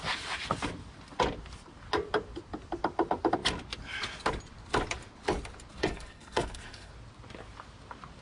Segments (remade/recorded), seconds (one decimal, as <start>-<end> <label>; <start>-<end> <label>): 0.0-5.8 recorded; 5.8-6.9 remade; 6.9-8.2 recorded